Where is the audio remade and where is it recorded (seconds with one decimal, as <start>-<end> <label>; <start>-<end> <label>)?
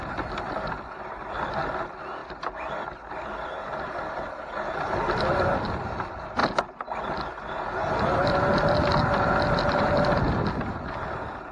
0.0-11.5 recorded